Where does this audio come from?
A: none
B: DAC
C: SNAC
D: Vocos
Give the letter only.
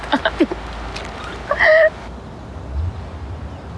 A